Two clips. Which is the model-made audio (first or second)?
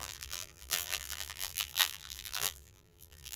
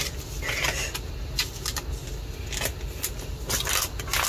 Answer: first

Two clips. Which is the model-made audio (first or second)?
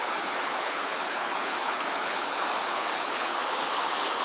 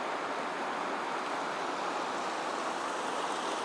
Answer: first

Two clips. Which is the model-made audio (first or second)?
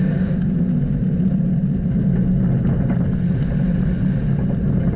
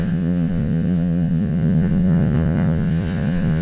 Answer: second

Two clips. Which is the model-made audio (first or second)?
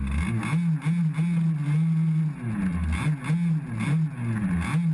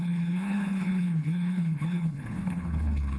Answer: second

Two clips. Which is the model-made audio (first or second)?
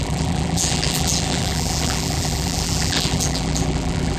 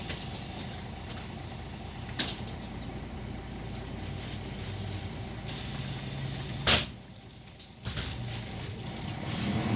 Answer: first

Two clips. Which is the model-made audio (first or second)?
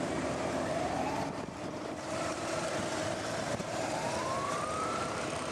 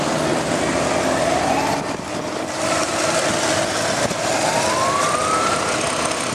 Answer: first